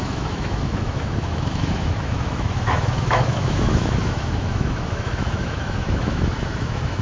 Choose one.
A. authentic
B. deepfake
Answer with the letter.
B